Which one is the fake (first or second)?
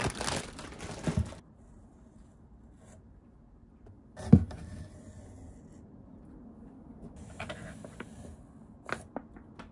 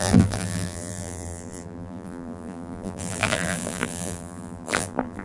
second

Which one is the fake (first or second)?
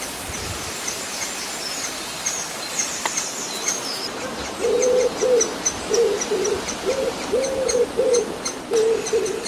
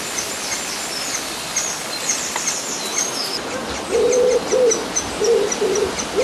first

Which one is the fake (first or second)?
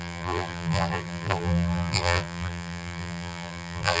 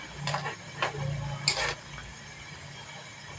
first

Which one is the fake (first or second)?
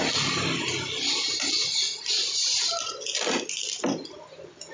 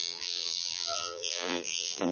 second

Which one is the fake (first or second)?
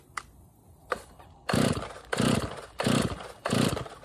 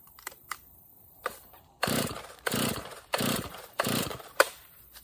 second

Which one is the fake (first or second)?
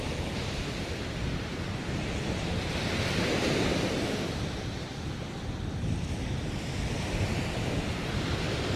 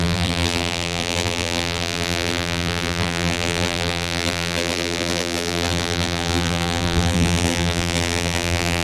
second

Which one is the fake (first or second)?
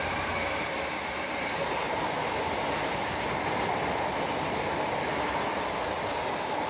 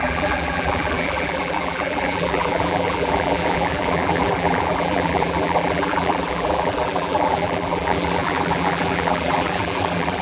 second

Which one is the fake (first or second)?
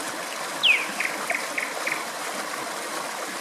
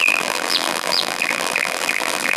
second